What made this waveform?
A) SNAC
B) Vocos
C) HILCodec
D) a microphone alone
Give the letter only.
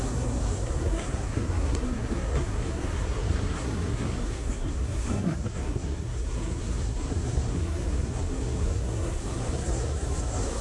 A